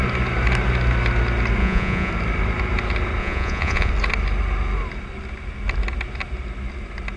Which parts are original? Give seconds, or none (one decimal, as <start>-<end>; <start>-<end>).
0.0-1.6; 2.1-3.2; 3.9-7.2